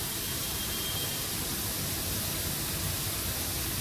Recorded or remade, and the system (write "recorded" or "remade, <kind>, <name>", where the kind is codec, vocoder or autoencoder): recorded